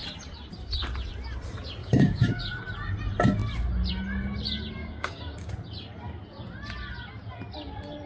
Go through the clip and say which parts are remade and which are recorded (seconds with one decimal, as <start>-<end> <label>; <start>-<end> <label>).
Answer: 0.0-1.8 recorded; 1.8-2.4 remade; 2.4-4.8 recorded; 4.8-5.5 remade; 5.5-8.1 recorded